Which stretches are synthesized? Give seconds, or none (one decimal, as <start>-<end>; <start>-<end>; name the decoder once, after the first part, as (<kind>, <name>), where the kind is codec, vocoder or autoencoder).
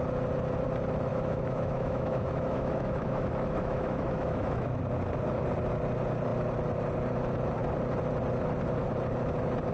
1.1-4.8 (autoencoder, DAC-VAE)